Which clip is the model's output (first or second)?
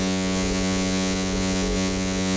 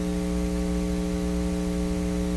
first